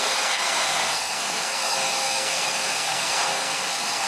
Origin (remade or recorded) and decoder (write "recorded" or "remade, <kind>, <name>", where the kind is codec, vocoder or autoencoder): remade, codec, SNAC